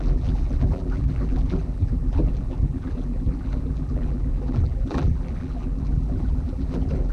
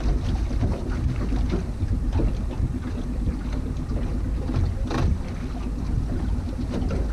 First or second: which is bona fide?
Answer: second